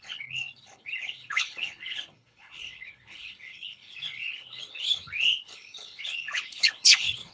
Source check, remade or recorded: remade